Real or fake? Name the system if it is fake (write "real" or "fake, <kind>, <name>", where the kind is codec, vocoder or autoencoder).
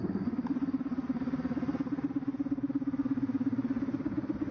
real